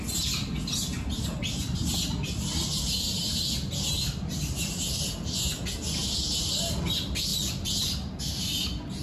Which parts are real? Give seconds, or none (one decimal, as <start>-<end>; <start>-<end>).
0.0-7.3; 8.2-9.0